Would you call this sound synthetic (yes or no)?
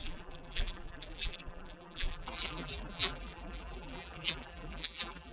yes